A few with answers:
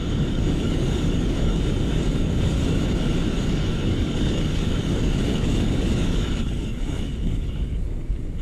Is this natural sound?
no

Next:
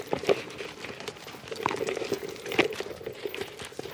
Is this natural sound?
yes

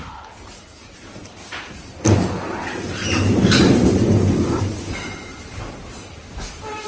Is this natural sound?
yes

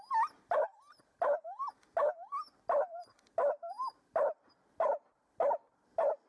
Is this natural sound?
yes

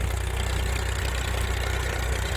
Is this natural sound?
yes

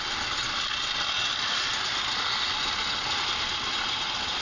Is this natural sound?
yes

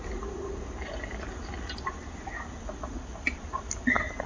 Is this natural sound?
yes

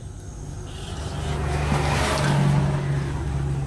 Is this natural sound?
yes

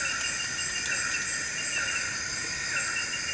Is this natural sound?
yes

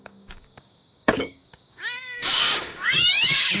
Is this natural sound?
no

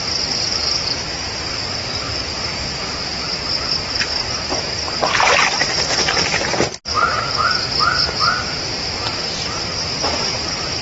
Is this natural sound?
yes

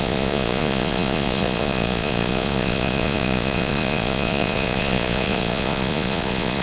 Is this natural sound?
no